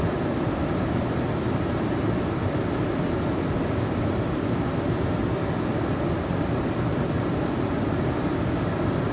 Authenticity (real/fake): real